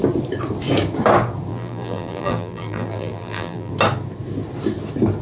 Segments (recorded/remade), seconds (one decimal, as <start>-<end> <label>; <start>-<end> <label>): 0.0-1.5 recorded; 1.5-3.7 remade; 3.7-5.2 recorded